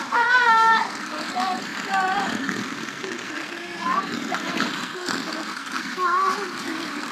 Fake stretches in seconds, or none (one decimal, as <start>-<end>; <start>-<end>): 0.0-7.1